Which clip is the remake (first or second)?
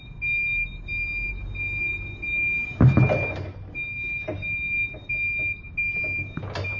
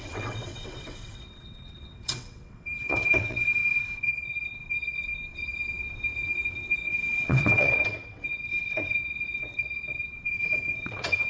second